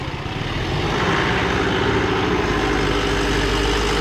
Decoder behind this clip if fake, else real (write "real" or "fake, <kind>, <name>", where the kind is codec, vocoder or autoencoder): real